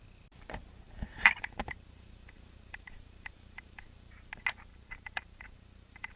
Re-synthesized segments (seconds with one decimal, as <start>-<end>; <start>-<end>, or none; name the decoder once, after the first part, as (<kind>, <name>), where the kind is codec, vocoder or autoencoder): 0.6-4.3 (vocoder, BigVGAN v2); 4.7-6.2